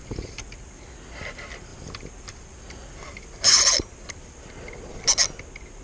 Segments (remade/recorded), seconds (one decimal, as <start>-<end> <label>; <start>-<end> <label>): 0.0-0.8 remade; 0.8-1.7 recorded; 1.7-4.5 remade; 4.5-5.8 recorded